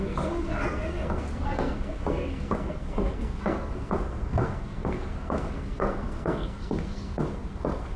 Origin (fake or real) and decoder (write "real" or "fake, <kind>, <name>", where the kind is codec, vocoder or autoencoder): fake, codec, SNAC